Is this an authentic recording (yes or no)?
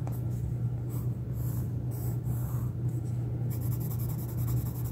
yes